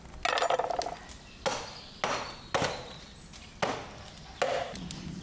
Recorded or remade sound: recorded